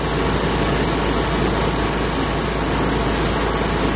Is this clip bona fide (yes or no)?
yes